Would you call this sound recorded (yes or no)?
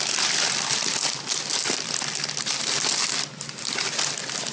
yes